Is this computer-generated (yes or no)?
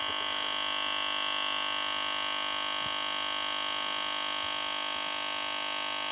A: no